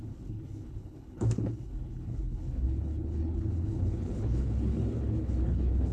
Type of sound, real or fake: fake